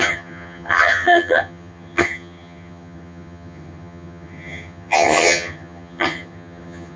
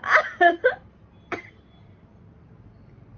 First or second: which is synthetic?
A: first